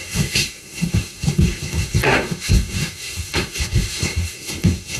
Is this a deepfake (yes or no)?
yes